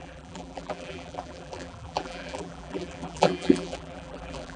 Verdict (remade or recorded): remade